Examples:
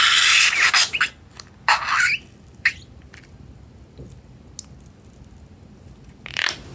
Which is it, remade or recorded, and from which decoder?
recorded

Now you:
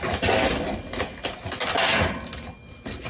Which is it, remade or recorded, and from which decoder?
recorded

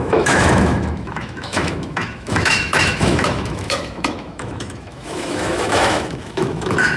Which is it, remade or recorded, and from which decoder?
remade, autoencoder, DAC-VAE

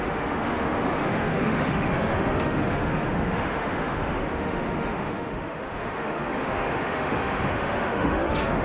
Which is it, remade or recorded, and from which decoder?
remade, autoencoder, DAC-VAE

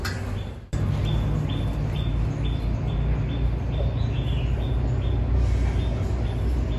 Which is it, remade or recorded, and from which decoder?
recorded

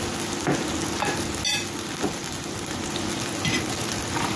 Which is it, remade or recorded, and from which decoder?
recorded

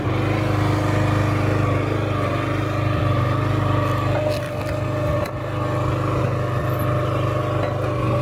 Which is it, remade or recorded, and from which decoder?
recorded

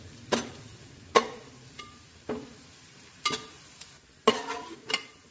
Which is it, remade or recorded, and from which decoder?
recorded